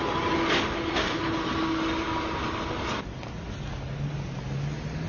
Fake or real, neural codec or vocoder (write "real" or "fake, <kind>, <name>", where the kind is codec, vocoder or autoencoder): real